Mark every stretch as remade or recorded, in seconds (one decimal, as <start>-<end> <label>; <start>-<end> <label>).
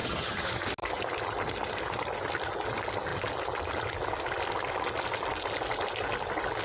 0.0-0.5 remade; 0.5-6.6 recorded